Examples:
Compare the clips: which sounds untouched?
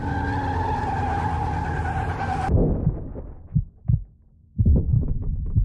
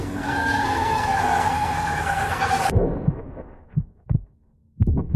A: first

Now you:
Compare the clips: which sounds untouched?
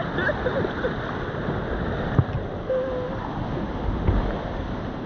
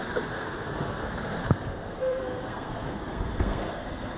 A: first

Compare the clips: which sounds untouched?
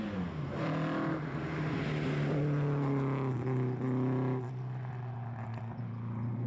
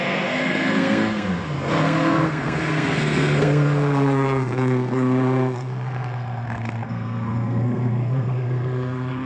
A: first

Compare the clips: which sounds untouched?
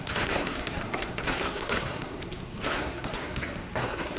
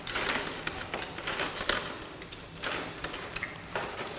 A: second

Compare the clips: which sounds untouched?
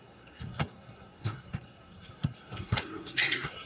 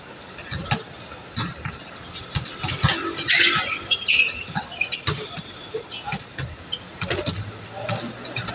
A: second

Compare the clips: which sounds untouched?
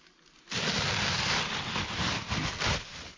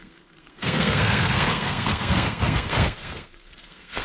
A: first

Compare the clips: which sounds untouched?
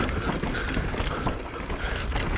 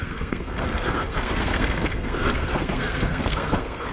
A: first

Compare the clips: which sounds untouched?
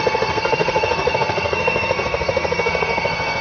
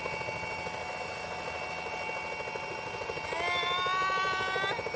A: second